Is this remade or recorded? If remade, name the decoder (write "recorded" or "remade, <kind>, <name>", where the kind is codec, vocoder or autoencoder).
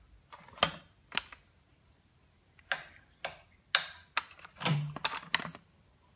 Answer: recorded